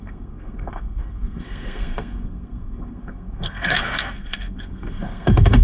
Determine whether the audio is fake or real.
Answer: fake